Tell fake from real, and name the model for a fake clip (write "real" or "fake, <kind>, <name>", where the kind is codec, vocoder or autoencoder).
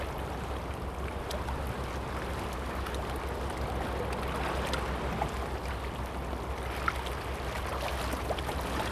real